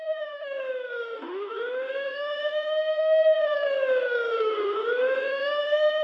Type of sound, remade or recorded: remade